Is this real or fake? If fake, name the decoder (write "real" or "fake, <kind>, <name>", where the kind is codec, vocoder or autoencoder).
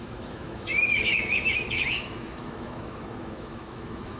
fake, autoencoder, DAC-VAE